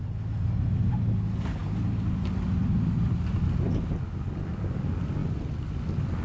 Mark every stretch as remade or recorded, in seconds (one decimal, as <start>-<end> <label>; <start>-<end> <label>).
0.0-6.2 recorded